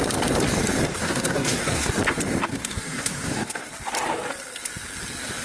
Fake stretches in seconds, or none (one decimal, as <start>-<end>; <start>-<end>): 0.9-1.9; 2.5-3.7